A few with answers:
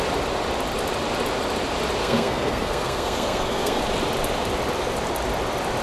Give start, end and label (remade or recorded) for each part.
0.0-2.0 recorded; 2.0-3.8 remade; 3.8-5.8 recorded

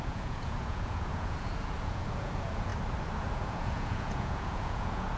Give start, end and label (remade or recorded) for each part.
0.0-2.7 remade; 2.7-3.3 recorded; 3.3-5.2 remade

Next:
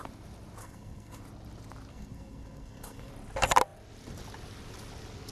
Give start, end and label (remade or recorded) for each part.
0.0-0.6 recorded; 0.6-1.2 remade; 1.2-1.9 recorded; 1.9-3.1 remade; 3.1-5.3 recorded

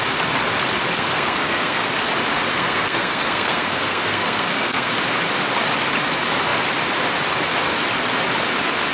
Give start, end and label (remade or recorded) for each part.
0.0-0.9 recorded; 0.9-1.9 remade; 1.9-2.5 recorded; 2.5-4.9 remade; 4.9-8.9 recorded

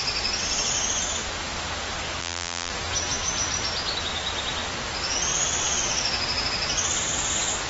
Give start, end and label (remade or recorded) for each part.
0.0-2.2 recorded; 2.2-2.7 remade; 2.7-7.7 recorded

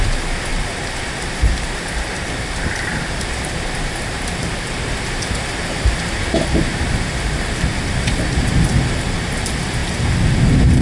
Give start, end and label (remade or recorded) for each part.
0.0-0.5 recorded; 0.5-4.9 remade; 4.9-6.7 recorded; 6.7-8.4 remade; 8.4-10.8 recorded

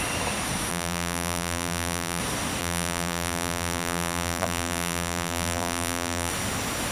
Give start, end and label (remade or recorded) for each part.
0.0-0.7 recorded; 0.7-2.2 remade; 2.2-2.6 recorded; 2.6-6.3 remade; 6.3-6.9 recorded